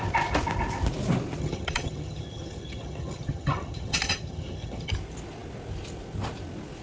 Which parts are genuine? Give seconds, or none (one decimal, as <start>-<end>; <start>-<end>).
0.0-1.4; 4.9-6.8